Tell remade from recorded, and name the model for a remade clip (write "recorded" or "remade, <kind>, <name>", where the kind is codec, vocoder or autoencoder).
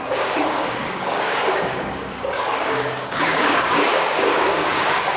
remade, codec, DAC